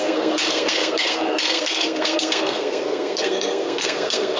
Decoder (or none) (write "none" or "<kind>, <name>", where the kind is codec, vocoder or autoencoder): codec, SNAC